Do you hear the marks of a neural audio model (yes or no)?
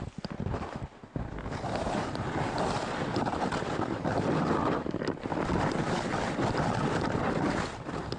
no